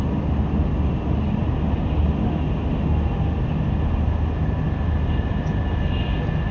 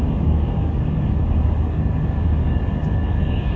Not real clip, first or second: second